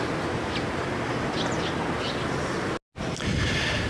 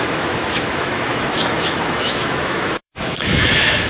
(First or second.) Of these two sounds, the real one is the first